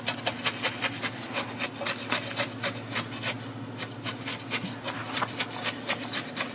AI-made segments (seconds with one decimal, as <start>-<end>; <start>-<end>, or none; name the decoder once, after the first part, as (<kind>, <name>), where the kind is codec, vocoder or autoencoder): none